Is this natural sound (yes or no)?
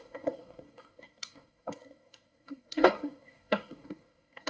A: no